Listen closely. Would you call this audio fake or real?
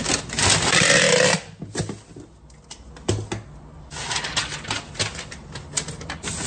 real